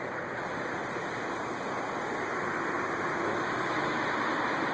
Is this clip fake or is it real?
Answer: real